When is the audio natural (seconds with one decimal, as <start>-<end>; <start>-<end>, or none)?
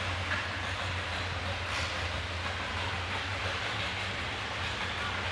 0.0-5.3